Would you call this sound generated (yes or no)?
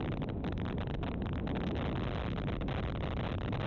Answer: no